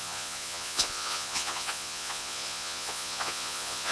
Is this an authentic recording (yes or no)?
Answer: no